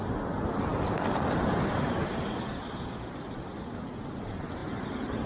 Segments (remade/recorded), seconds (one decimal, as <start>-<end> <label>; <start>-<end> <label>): 0.0-0.7 recorded; 0.7-3.9 remade; 3.9-5.3 recorded